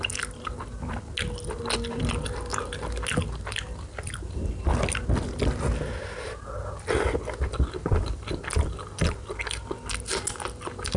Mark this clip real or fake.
real